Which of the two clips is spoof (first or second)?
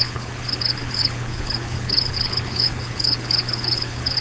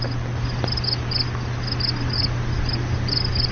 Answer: first